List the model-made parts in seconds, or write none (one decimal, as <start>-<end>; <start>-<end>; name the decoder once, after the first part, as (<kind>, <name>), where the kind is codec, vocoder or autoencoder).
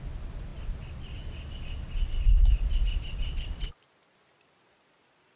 none